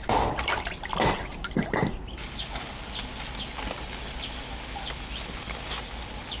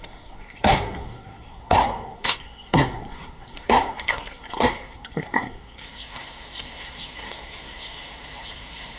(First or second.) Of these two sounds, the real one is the first